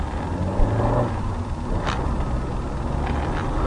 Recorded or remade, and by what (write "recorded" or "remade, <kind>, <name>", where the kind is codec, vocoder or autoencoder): recorded